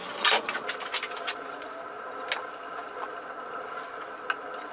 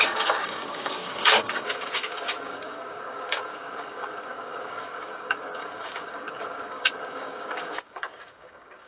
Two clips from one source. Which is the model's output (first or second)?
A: second